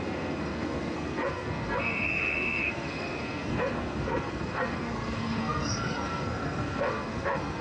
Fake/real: fake